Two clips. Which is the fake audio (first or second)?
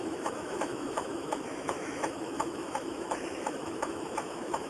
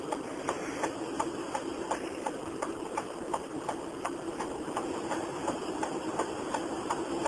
first